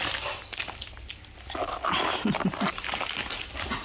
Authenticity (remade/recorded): recorded